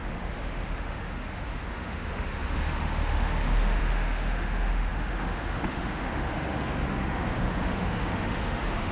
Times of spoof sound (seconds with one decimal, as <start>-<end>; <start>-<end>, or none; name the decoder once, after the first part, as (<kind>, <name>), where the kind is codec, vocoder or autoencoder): 0.0-8.9 (autoencoder, DAC-VAE)